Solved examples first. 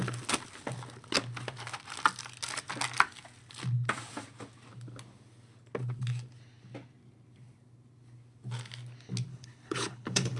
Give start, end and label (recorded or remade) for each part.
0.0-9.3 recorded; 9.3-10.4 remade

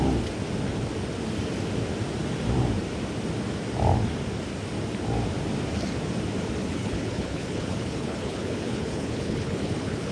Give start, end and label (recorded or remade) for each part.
0.0-6.6 recorded; 6.6-10.1 remade

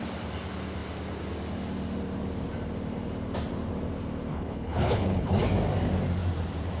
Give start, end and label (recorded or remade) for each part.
0.0-4.3 recorded; 4.3-5.4 remade; 5.4-6.8 recorded

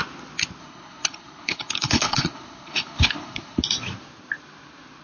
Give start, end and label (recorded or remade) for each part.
0.0-0.6 recorded; 0.6-3.6 remade; 3.6-5.0 recorded

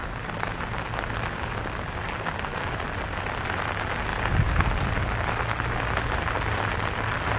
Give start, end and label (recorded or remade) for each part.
0.0-7.4 recorded

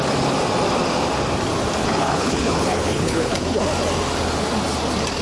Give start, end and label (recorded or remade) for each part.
0.0-1.8 recorded; 1.8-3.6 remade; 3.6-5.2 recorded